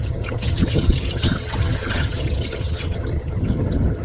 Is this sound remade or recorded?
remade